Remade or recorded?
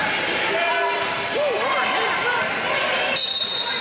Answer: remade